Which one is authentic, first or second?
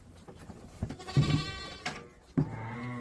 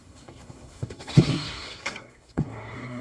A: first